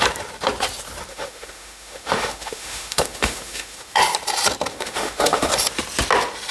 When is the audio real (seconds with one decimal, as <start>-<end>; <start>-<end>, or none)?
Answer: 0.0-1.1; 4.0-4.7; 5.5-6.5